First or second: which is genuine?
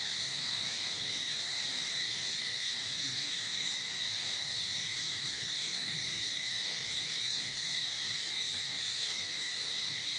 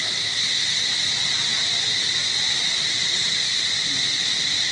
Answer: second